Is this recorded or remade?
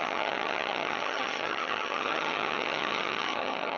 remade